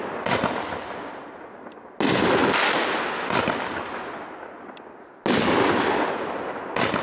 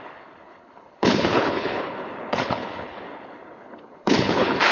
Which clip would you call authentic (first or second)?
first